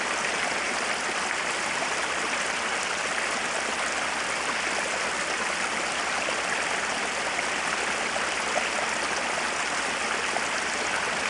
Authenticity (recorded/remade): recorded